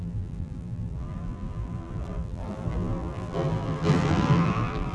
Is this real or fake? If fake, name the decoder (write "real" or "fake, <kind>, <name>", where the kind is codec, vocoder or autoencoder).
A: fake, vocoder, BigVGAN v2